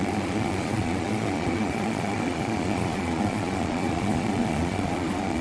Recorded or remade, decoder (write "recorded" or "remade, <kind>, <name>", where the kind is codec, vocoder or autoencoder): remade, vocoder, Vocos